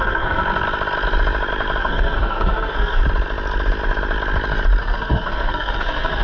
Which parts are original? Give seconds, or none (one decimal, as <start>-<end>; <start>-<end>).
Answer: 0.4-1.8; 3.0-4.8